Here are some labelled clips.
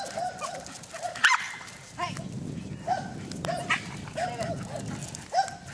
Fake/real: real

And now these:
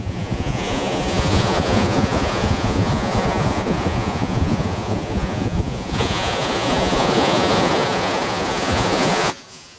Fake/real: fake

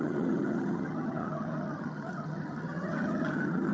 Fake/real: fake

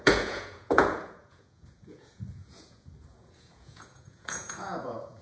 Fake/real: fake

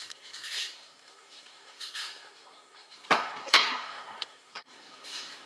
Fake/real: fake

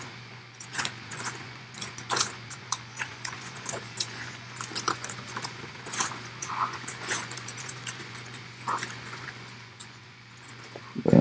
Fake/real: fake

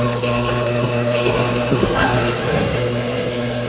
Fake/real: fake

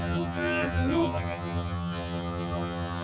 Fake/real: fake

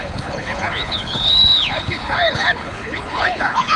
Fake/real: fake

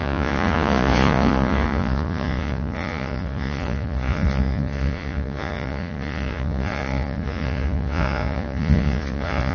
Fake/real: fake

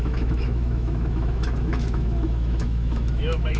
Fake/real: fake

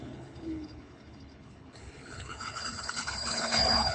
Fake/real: fake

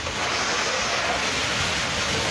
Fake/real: real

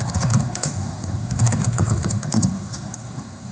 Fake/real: fake